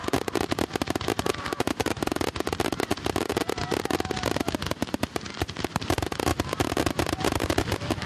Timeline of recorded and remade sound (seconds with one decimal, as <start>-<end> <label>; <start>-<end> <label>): 0.0-1.8 recorded; 1.8-2.9 remade; 2.9-4.9 recorded; 4.9-6.3 remade; 6.3-7.6 recorded; 7.6-8.1 remade

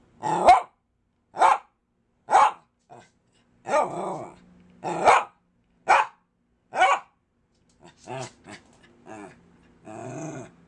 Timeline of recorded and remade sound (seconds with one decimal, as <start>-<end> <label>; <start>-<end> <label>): 0.0-10.7 recorded

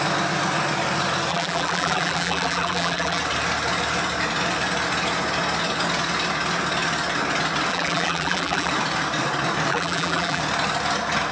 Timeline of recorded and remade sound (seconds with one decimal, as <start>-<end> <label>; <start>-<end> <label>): 0.0-1.3 recorded; 1.3-3.2 remade; 3.2-7.7 recorded; 7.7-8.7 remade; 8.7-9.7 recorded; 9.7-10.4 remade; 10.4-11.3 recorded